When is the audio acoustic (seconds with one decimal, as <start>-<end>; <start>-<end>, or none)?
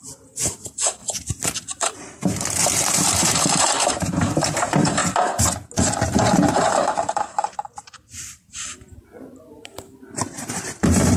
1.0-1.8; 5.0-6.6